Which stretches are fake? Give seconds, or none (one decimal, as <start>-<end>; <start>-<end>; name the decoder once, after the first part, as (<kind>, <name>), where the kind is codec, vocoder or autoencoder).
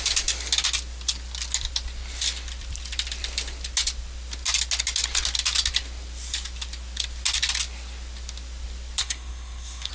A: 9.0-9.9 (codec, SNAC)